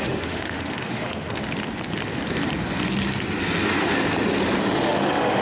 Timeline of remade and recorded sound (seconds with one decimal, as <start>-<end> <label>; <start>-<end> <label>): 0.0-1.4 remade; 1.4-4.6 recorded; 4.6-5.4 remade